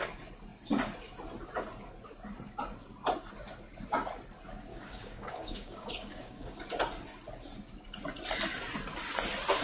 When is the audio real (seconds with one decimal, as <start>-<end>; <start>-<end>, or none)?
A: 0.0-4.7; 6.6-9.6